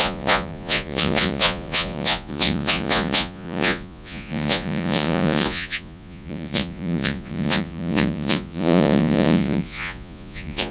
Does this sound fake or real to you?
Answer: fake